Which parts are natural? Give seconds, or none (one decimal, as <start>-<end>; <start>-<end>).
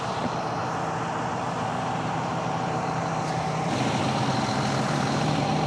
0.6-1.3